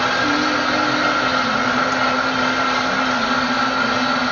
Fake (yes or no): no